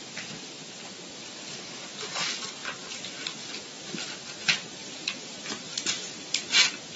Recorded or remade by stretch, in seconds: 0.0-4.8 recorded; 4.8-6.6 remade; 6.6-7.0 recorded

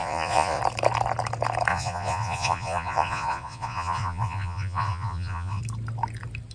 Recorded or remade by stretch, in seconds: 0.0-0.6 remade; 0.6-1.7 recorded; 1.7-5.6 remade; 5.6-6.5 recorded